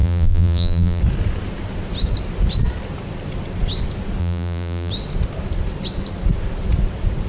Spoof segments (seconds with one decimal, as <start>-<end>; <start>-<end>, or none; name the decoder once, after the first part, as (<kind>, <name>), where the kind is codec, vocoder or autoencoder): 0.0-1.0 (vocoder, BigVGAN v2); 4.2-4.9